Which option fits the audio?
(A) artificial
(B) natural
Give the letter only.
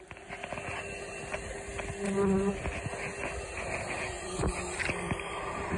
B